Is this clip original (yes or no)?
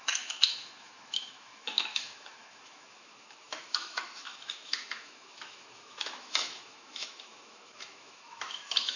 no